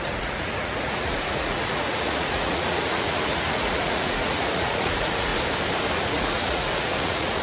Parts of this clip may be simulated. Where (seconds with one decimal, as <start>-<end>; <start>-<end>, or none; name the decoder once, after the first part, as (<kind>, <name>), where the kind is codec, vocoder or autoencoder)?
0.0-5.3 (vocoder, Vocos); 5.9-7.4

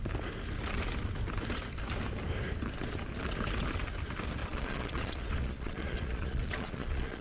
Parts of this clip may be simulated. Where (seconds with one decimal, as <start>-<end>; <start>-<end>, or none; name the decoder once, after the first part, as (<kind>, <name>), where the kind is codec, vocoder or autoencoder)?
4.4-7.2 (vocoder, Vocos)

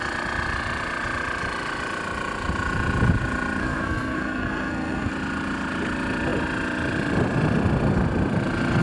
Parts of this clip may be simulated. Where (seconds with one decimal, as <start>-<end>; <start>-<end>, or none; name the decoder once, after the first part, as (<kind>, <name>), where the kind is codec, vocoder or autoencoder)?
3.6-5.1 (codec, SNAC)

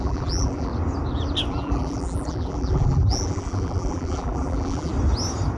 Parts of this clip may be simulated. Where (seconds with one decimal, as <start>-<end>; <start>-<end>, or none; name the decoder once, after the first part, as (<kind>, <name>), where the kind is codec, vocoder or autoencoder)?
0.0-0.7 (vocoder, BigVGAN v2); 1.5-4.9